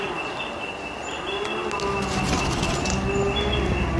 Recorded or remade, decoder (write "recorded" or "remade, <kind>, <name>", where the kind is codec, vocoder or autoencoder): recorded